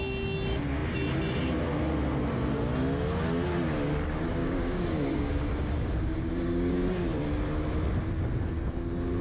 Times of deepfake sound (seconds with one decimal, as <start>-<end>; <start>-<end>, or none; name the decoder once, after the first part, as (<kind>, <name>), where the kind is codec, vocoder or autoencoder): 4.4-6.7 (codec, DAC)